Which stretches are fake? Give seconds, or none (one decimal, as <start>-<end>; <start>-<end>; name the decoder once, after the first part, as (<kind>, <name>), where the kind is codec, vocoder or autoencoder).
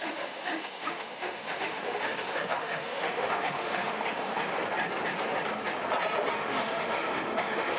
0.0-4.5 (autoencoder, DAC-VAE); 6.3-7.8